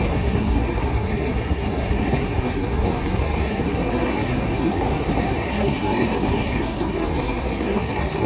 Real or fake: fake